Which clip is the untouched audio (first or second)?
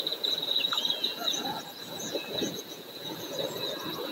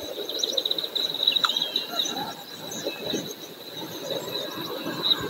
second